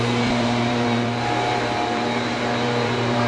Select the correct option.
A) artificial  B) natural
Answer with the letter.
A